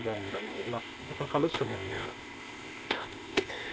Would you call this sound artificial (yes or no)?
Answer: yes